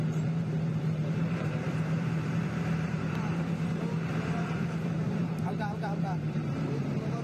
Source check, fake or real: fake